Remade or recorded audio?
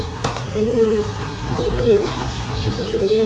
remade